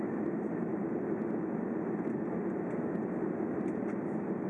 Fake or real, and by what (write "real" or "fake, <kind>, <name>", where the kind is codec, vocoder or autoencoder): real